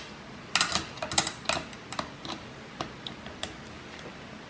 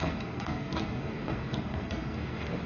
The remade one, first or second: second